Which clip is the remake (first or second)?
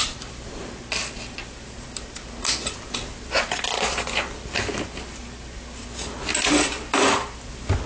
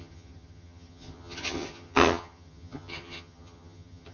second